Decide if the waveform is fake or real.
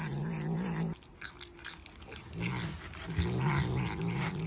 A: real